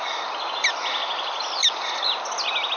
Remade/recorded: recorded